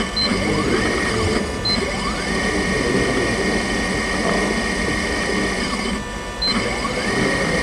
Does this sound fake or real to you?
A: real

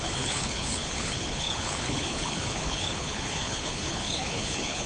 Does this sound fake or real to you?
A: fake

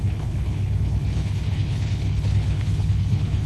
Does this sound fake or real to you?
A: fake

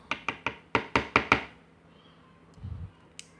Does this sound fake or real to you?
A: real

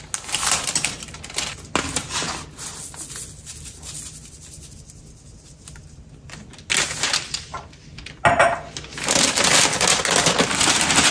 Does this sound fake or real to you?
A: real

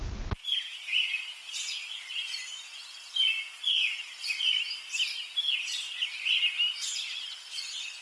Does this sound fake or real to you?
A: real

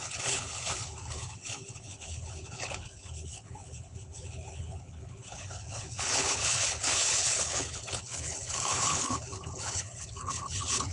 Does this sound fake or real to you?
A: fake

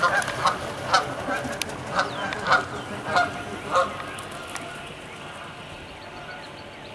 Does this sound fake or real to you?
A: real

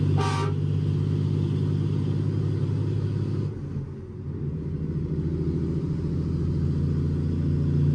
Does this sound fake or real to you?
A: real